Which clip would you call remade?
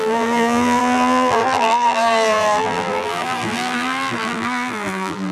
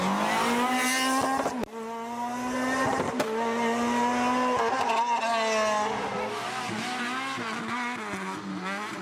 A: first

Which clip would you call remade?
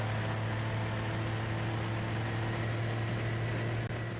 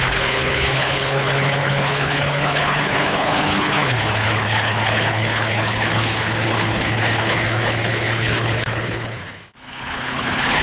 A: second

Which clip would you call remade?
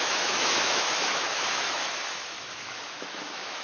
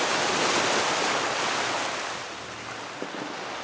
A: first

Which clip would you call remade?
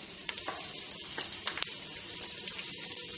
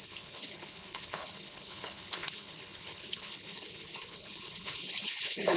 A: second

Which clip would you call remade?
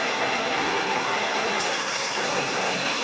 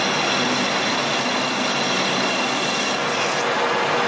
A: first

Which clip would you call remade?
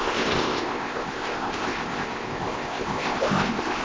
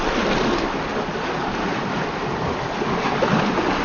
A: first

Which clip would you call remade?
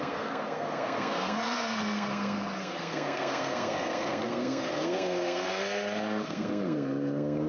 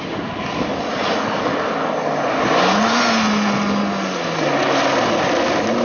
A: first